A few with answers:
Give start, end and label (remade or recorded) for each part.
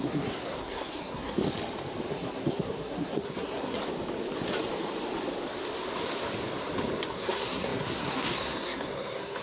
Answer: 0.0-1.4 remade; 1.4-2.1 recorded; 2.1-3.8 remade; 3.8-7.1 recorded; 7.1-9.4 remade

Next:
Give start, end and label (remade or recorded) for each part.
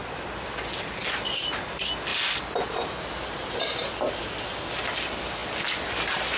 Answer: 0.0-6.4 recorded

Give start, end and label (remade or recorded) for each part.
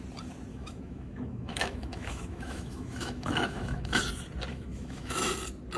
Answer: 0.0-0.5 recorded; 0.5-4.0 remade; 4.0-4.5 recorded; 4.5-5.3 remade; 5.3-5.8 recorded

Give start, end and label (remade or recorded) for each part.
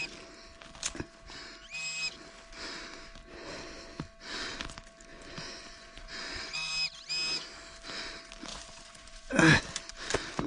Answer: 0.0-5.1 recorded; 5.1-6.7 remade; 6.7-8.5 recorded; 8.5-9.6 remade; 9.6-10.5 recorded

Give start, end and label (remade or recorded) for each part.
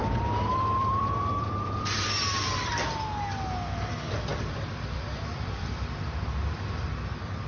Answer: 0.0-2.7 remade; 2.7-4.3 recorded; 4.3-7.5 remade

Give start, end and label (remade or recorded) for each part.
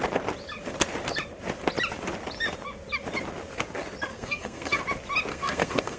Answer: 0.0-4.1 recorded; 4.1-4.8 remade; 4.8-5.3 recorded; 5.3-6.0 remade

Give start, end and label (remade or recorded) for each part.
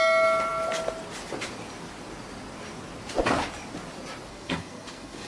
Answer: 0.0-4.3 recorded; 4.3-5.3 remade